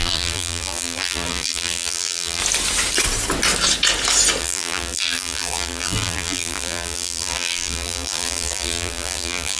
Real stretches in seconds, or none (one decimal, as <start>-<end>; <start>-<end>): 2.4-4.4